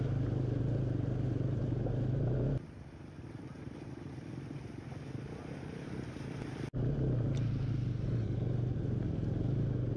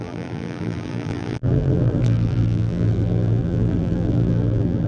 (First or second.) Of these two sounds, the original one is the first